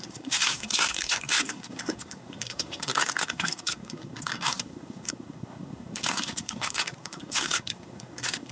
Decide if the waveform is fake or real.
fake